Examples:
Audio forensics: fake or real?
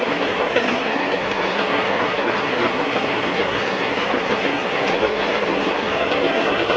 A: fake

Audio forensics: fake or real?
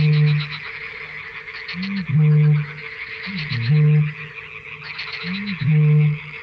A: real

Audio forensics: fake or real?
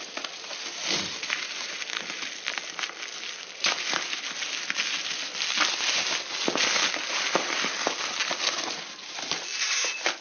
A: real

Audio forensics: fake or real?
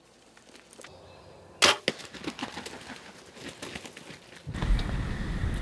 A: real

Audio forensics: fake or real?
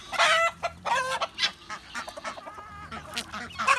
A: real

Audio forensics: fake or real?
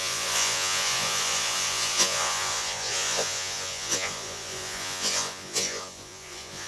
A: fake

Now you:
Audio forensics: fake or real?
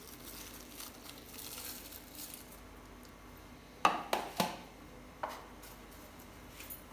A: real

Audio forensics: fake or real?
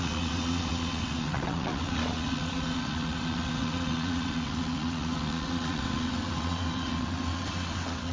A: fake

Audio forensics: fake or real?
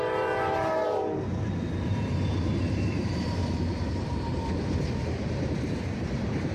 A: fake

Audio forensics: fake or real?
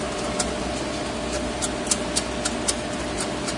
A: real